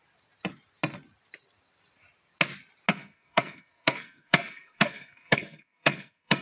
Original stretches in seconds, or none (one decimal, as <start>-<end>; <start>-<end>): 0.0-2.9